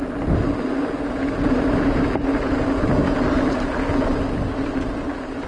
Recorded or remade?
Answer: recorded